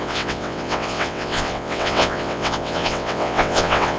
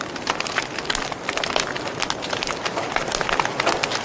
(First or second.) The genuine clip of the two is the second